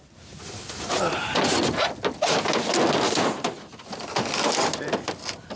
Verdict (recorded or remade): recorded